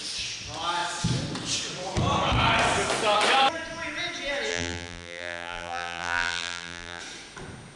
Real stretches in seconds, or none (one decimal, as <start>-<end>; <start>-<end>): 0.0-4.5; 7.0-7.8